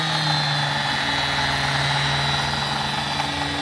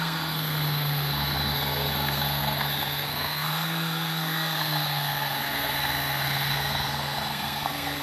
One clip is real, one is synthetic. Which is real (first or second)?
first